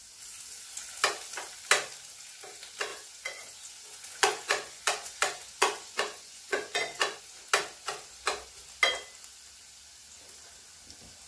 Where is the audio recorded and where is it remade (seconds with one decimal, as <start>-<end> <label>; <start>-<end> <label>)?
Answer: 0.0-2.9 recorded; 2.9-7.2 remade; 7.2-11.3 recorded